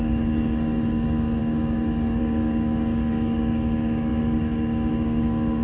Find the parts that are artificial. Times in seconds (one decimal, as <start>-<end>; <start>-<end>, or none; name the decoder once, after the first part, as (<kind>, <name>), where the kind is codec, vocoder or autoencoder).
0.0-5.6 (codec, DAC)